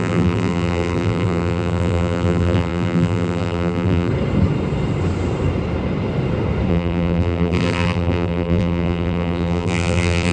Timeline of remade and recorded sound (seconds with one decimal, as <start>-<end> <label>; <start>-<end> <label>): 0.0-4.1 remade; 4.1-6.7 recorded; 6.7-10.3 remade